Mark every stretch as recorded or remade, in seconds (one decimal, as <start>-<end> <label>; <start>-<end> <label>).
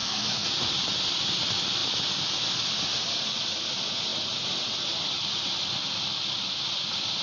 0.0-0.5 remade; 0.5-7.2 recorded